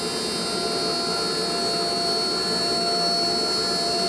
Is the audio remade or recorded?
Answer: recorded